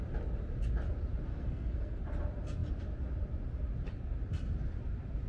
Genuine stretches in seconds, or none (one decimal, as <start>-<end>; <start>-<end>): 0.0-1.3; 2.0-5.3